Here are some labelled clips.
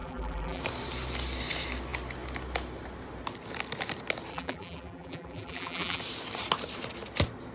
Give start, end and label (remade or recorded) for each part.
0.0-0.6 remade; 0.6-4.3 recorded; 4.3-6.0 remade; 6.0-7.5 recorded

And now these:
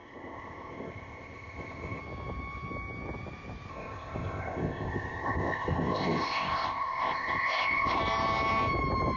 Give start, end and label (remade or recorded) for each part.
0.0-2.0 remade; 2.0-3.7 recorded; 3.7-8.0 remade; 8.0-9.2 recorded

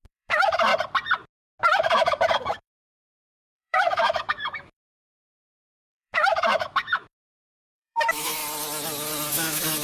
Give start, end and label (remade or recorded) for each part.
0.0-0.7 remade; 0.7-1.6 recorded; 1.6-8.4 remade; 8.4-9.3 recorded; 9.3-9.8 remade

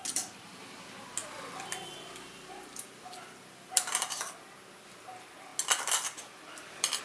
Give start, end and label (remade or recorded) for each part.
0.0-7.0 recorded

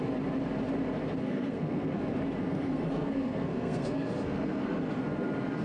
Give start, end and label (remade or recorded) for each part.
0.0-1.2 recorded; 1.2-2.0 remade; 2.0-2.4 recorded; 2.4-5.0 remade; 5.0-5.6 recorded

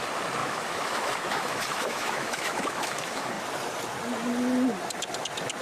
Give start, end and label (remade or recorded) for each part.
0.0-0.4 recorded; 0.4-3.3 remade; 3.3-5.6 recorded